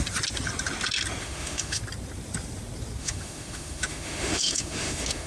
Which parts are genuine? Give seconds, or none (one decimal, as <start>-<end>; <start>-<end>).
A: 0.0-1.2; 1.8-3.0